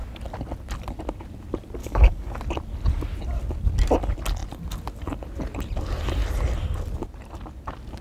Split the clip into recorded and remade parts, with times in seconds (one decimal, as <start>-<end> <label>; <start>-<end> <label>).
0.0-1.8 recorded; 1.8-2.4 remade; 2.4-8.0 recorded